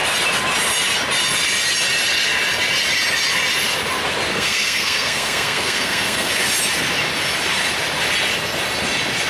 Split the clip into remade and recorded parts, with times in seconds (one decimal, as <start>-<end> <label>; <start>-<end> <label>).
0.0-4.3 recorded; 4.3-6.4 remade; 6.4-9.3 recorded